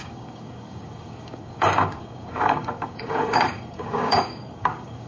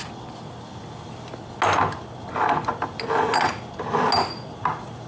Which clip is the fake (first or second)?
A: first